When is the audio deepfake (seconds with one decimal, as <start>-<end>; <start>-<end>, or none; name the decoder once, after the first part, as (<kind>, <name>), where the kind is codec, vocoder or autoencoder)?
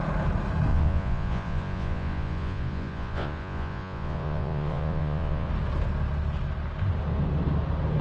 0.7-5.5 (vocoder, Vocos)